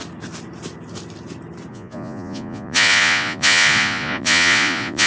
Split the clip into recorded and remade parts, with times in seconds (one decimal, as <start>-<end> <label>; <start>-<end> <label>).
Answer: 0.0-1.7 recorded; 1.7-5.1 remade